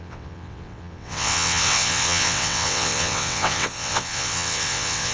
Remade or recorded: remade